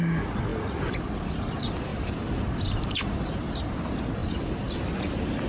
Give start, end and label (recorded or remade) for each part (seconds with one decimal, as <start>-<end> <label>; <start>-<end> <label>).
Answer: 0.0-1.9 recorded; 1.9-3.2 remade; 3.2-4.2 recorded; 4.2-4.8 remade; 4.8-5.5 recorded